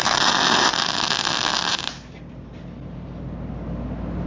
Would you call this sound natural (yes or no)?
yes